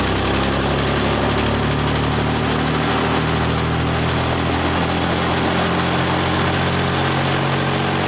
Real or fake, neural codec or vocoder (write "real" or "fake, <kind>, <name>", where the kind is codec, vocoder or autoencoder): real